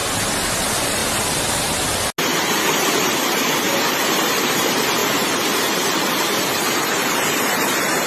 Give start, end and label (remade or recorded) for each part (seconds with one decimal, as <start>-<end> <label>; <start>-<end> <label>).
0.0-0.5 recorded; 0.5-1.0 remade; 1.0-3.9 recorded; 3.9-8.1 remade